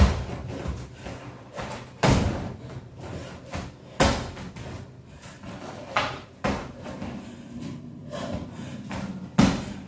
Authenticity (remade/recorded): recorded